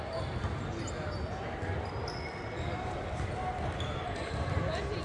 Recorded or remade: recorded